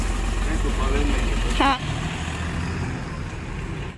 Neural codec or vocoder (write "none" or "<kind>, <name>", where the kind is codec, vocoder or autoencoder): none